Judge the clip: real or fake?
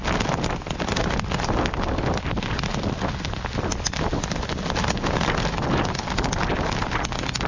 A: real